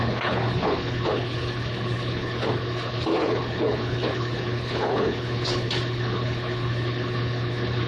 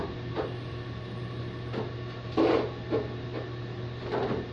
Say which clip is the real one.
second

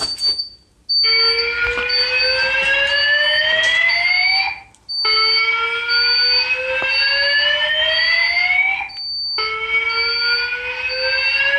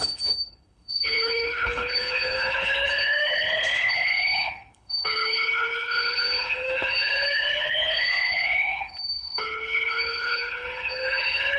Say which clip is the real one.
first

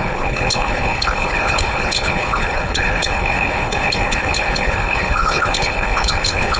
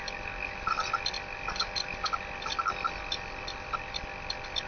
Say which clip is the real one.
second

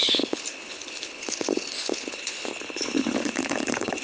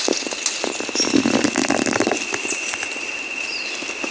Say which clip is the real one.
second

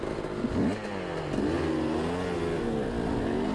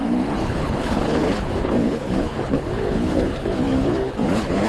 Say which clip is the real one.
first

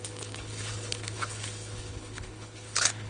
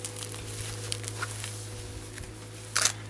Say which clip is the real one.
second